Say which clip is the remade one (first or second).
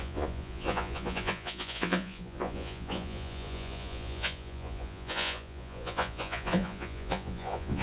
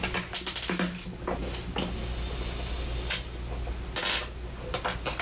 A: first